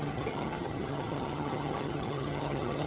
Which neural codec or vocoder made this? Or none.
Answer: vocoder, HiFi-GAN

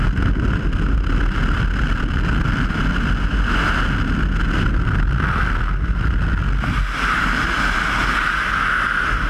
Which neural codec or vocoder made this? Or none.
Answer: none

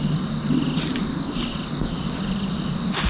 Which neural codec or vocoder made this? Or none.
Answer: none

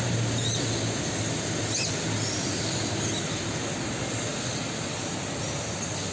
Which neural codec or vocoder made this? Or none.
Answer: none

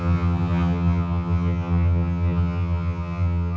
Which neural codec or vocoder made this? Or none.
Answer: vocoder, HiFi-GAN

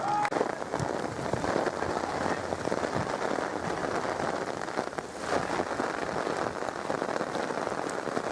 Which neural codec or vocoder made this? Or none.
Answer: none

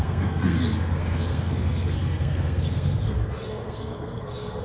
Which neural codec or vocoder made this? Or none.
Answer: codec, SNAC